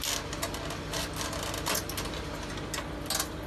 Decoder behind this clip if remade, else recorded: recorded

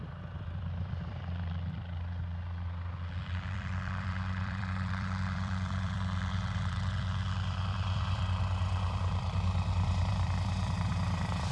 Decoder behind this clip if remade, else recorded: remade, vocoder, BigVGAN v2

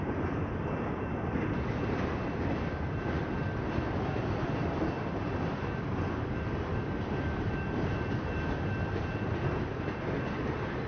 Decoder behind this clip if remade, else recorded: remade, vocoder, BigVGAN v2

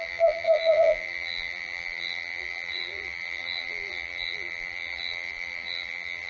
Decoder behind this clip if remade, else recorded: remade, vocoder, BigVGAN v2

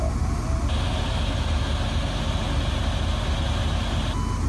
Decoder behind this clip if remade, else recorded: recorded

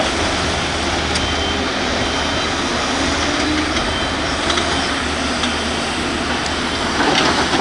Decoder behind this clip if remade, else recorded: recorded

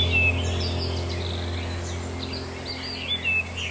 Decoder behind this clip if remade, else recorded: recorded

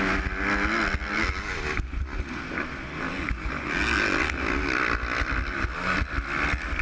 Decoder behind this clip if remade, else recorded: recorded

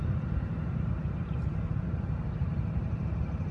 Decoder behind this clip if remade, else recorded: remade, vocoder, BigVGAN v2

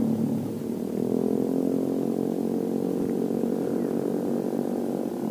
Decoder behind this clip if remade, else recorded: recorded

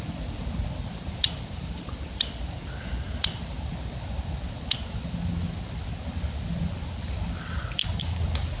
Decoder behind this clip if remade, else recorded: remade, vocoder, BigVGAN v2